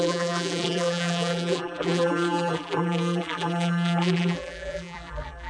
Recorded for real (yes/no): no